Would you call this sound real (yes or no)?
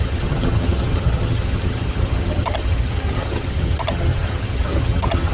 no